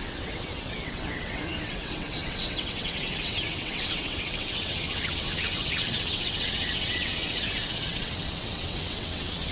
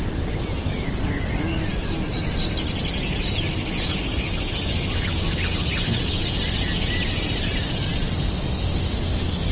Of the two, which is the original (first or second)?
second